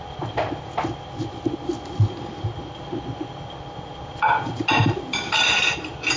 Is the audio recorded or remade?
recorded